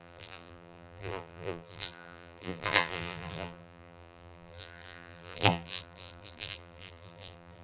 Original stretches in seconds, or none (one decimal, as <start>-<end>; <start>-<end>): none